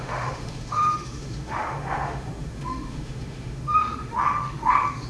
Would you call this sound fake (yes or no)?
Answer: yes